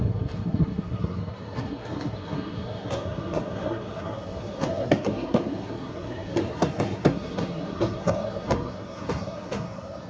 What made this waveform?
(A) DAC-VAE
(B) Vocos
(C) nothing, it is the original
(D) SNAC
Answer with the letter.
D